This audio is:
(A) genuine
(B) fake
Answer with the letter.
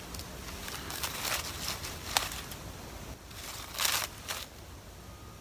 A